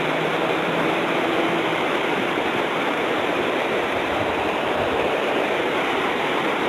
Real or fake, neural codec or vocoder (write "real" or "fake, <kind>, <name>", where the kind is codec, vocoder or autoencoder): fake, vocoder, BigVGAN v2